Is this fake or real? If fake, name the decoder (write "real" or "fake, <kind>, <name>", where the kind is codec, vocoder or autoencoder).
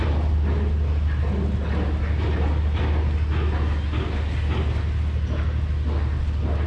real